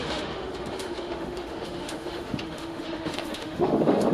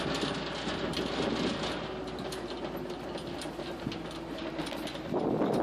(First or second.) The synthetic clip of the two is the first